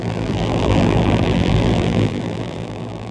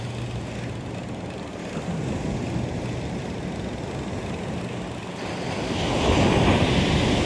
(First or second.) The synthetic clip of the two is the first